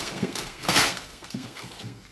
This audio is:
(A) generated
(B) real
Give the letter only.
A